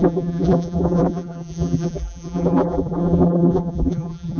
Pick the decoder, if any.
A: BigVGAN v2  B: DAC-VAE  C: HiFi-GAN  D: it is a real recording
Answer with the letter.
A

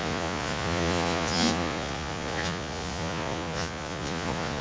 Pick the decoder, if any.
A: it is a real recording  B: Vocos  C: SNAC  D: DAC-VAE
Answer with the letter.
B